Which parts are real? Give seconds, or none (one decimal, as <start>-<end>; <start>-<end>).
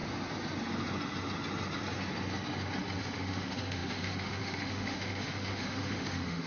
0.0-3.0